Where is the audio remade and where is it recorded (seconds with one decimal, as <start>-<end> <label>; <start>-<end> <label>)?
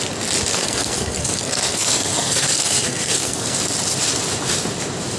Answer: 0.0-0.5 recorded; 0.5-3.6 remade; 3.6-5.2 recorded